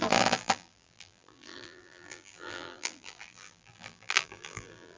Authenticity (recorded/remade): remade